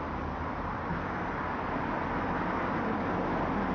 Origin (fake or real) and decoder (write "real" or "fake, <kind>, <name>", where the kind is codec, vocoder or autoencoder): real